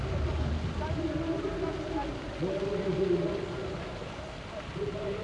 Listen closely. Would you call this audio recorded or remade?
recorded